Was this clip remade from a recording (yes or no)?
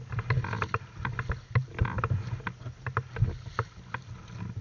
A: no